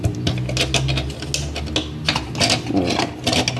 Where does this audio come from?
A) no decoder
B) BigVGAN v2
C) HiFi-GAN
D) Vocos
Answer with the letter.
A